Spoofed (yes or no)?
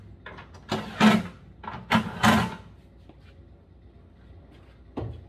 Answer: no